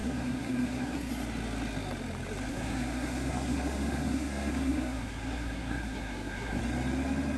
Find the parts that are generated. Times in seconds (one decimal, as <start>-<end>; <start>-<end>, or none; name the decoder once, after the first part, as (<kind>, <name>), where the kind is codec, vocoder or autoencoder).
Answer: 0.0-1.1 (codec, SNAC); 2.5-6.6